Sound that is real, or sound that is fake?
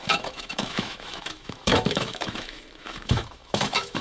fake